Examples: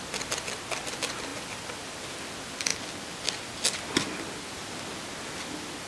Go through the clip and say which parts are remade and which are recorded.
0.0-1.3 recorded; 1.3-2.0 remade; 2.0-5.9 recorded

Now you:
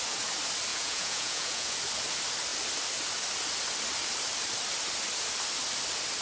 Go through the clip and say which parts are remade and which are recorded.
0.0-0.7 recorded; 0.7-1.7 remade; 1.7-6.2 recorded

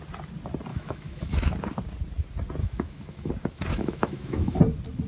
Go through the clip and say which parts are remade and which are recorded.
0.0-0.7 recorded; 0.7-1.5 remade; 1.5-2.6 recorded; 2.6-3.3 remade; 3.3-3.7 recorded; 3.7-4.6 remade; 4.6-5.1 recorded

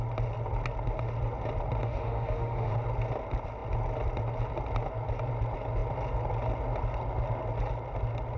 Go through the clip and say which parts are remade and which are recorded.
0.0-1.8 recorded; 1.8-2.7 remade; 2.7-8.4 recorded

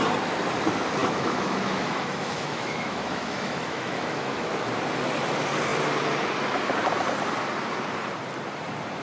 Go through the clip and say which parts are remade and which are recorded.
0.0-1.0 recorded; 1.0-4.7 remade; 4.7-9.0 recorded

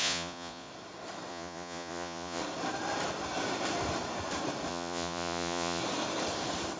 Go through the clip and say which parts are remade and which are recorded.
0.0-0.7 remade; 0.7-1.3 recorded; 1.3-2.4 remade; 2.4-4.7 recorded; 4.7-5.8 remade; 5.8-6.8 recorded

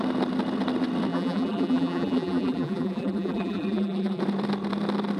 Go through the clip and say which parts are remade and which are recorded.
0.0-1.1 recorded; 1.1-4.2 remade; 4.2-5.2 recorded